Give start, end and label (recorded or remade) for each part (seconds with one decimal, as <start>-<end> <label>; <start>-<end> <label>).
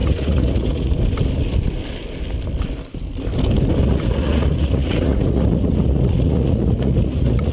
0.0-0.9 remade; 0.9-3.8 recorded; 3.8-7.5 remade